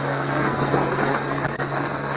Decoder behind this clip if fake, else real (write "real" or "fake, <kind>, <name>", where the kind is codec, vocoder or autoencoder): fake, codec, SNAC